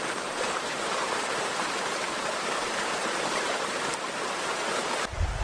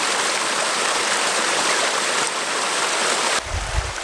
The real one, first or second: second